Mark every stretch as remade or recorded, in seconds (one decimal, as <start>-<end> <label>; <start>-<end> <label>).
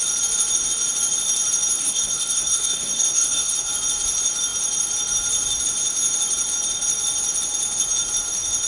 0.0-1.8 recorded; 1.8-3.7 remade; 3.7-8.7 recorded